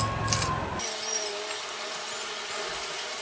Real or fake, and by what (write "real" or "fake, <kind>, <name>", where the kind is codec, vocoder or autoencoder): real